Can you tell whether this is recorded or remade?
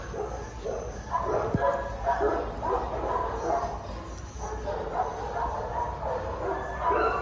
recorded